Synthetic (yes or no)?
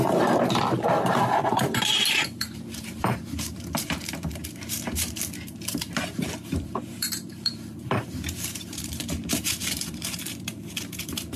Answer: yes